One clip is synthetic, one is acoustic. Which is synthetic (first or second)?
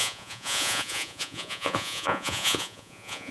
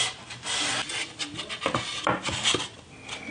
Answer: first